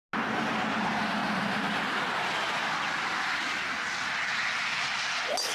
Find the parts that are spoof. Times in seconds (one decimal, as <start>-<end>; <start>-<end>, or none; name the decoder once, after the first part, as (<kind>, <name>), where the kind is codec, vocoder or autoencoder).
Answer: none